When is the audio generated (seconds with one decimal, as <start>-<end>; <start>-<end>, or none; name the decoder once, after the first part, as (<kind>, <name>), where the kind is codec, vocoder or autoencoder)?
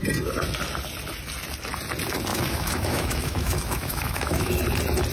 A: 2.3-4.5 (autoencoder, DAC-VAE)